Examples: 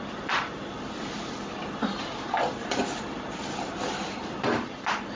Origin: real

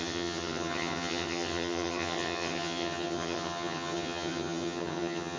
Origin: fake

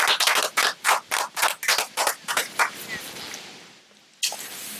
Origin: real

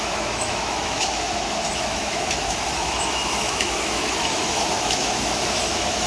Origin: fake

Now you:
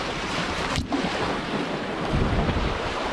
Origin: fake